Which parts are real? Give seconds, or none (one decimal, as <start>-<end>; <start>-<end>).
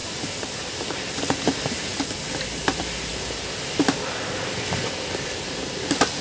1.9-2.6; 3.1-4.8